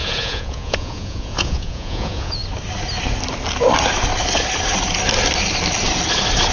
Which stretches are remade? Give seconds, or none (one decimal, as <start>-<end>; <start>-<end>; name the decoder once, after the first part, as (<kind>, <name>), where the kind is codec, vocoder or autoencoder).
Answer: 0.0-2.4 (vocoder, Vocos)